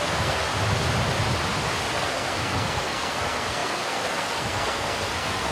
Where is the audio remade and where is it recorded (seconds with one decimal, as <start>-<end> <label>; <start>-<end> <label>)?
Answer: 0.0-0.5 remade; 0.5-1.9 recorded; 1.9-5.5 remade